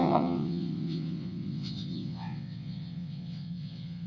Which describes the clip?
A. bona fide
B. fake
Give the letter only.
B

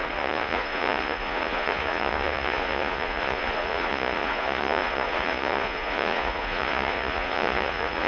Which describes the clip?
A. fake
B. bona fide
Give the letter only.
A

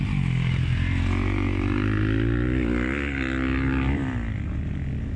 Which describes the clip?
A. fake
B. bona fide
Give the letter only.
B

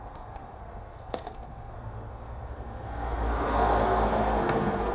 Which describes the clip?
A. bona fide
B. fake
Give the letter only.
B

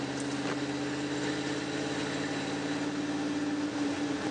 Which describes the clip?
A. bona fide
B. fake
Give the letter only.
A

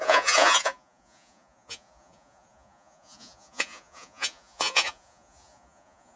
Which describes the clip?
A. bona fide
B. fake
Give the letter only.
B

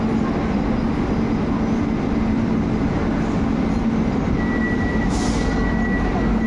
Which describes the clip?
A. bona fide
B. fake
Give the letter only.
A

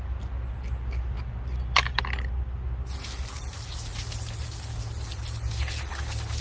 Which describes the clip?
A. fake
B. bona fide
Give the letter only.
B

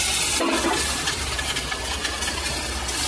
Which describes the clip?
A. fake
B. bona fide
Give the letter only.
B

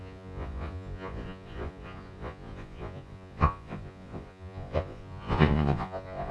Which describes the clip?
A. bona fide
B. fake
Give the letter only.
B